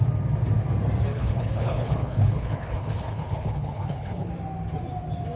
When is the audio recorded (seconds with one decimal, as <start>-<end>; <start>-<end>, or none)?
0.0-1.1; 4.3-5.4